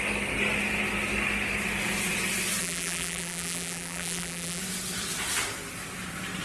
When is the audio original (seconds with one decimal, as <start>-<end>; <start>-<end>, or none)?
0.0-2.6; 4.6-6.4